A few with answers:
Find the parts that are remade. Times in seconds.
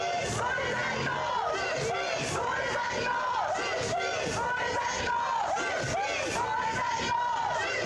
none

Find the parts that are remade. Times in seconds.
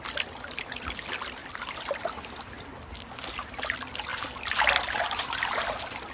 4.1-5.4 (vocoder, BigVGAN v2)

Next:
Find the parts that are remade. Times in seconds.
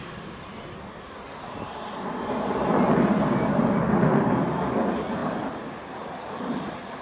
none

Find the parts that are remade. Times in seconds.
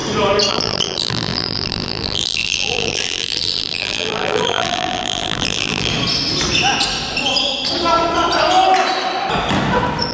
0.5-5.9 (vocoder, BigVGAN v2)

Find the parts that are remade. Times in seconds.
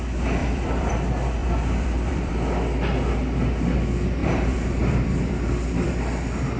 0.4-0.9 (vocoder, BigVGAN v2); 1.4-2.3; 4.2-5.9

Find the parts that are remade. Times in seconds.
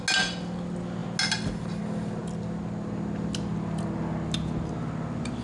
none